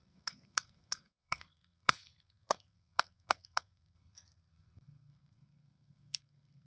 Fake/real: fake